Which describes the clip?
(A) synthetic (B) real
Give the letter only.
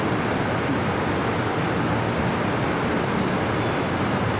B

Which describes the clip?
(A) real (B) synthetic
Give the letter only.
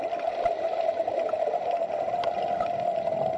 A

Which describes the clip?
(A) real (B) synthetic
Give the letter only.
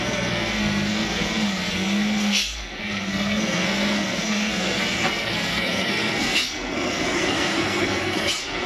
B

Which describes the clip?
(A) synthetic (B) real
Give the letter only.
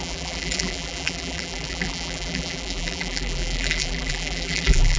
A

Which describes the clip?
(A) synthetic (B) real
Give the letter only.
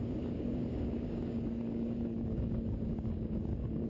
A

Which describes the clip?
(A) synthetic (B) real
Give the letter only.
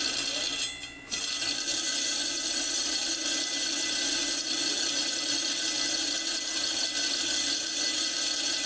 B